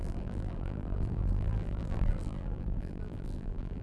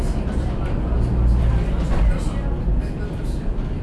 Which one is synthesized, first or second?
first